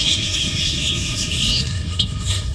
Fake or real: fake